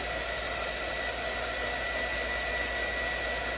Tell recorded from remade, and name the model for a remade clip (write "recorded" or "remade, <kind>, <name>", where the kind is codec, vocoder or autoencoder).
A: recorded